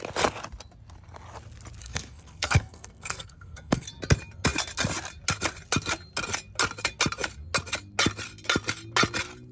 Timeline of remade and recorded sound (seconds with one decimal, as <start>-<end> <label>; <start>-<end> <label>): 0.0-1.8 recorded; 1.8-3.9 remade; 3.9-9.5 recorded